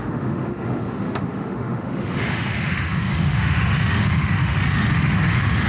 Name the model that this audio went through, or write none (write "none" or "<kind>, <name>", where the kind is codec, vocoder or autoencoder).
autoencoder, DAC-VAE